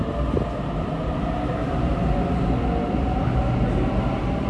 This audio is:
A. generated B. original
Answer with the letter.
B